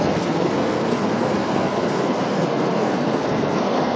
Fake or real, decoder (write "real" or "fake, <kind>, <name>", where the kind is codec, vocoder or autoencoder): fake, codec, SNAC